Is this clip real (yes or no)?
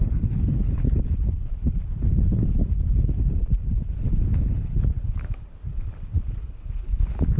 no